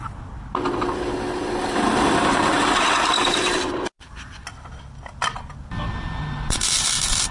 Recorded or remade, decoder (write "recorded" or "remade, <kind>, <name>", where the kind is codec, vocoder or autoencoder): recorded